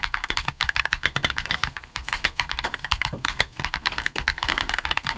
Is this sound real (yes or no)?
no